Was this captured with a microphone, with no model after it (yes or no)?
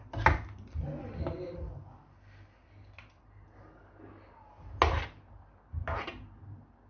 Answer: yes